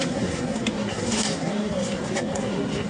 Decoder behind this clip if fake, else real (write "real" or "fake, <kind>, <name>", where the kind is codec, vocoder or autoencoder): fake, codec, SNAC